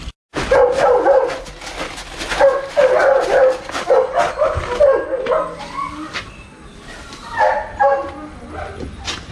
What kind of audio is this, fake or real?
real